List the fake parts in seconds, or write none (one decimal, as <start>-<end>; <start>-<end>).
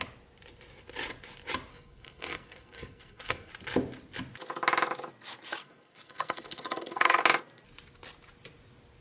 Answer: 1.7-3.5; 5.6-7.2